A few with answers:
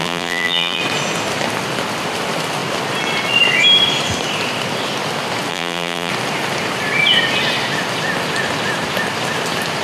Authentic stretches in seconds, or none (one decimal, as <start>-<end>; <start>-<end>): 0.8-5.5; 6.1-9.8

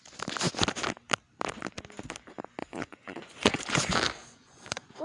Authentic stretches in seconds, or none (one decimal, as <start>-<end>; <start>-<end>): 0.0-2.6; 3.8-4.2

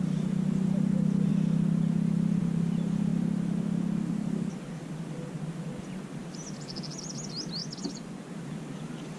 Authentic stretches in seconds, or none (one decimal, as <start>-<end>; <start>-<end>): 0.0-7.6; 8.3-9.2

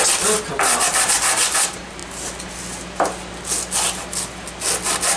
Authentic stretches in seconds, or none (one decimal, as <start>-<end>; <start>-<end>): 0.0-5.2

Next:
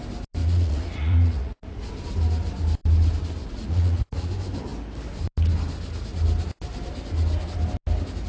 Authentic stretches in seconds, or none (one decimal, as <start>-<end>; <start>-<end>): 0.0-0.4; 1.9-3.4; 4.3-8.3

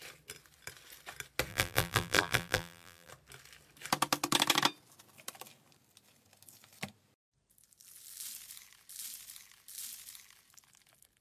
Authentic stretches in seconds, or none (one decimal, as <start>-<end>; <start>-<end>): 0.0-1.5; 3.1-11.2